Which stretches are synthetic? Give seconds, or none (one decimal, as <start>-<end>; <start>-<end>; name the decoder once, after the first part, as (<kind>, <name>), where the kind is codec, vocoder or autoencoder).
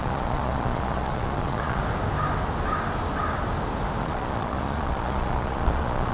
0.0-1.8 (vocoder, Vocos); 4.0-6.1